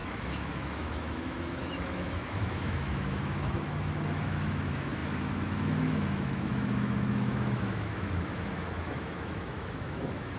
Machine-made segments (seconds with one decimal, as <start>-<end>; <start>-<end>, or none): 0.0-10.4